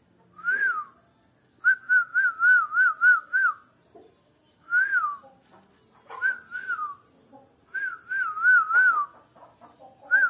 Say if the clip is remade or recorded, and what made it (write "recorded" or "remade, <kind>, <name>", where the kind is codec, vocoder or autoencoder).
recorded